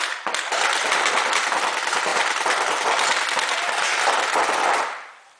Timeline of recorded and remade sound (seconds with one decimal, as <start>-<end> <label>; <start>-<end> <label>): 0.0-5.4 recorded